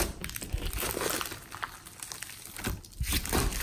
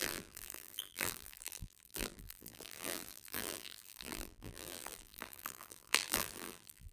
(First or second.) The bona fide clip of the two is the first